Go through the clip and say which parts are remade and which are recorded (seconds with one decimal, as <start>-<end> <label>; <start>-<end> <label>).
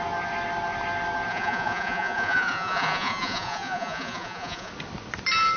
0.0-1.3 recorded; 1.3-4.7 remade; 4.7-5.6 recorded